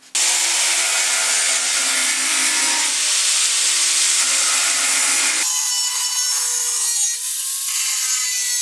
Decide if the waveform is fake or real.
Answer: real